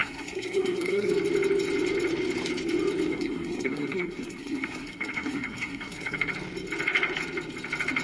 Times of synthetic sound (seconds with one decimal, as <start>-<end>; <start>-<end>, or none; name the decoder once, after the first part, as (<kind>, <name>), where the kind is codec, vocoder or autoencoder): 0.0-1.1 (codec, SNAC); 3.1-6.3